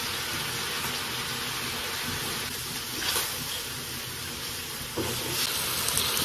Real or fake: real